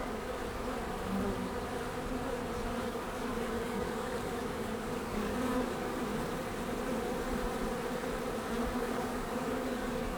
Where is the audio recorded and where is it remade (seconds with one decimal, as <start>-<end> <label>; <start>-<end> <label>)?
0.0-0.4 remade; 0.4-2.8 recorded; 2.8-6.1 remade; 6.1-8.7 recorded; 8.7-10.2 remade